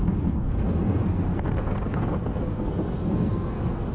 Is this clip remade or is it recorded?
remade